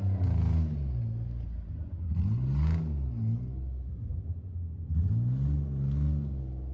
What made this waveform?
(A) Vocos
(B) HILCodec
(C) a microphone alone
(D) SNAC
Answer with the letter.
C